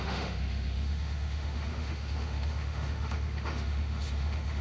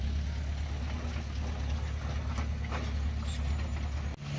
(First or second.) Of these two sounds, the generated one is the first